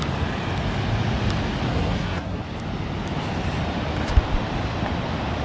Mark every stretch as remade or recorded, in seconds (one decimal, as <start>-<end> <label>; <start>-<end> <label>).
0.0-1.7 recorded; 1.7-2.4 remade; 2.4-5.4 recorded